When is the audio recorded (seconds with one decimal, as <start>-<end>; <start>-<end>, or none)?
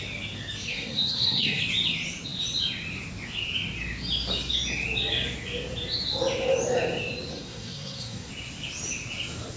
0.0-0.7; 1.6-7.3; 8.3-9.6